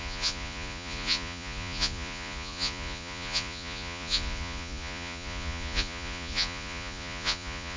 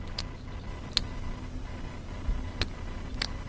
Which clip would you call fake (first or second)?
first